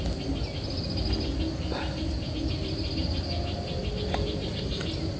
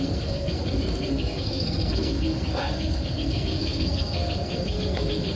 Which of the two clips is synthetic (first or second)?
second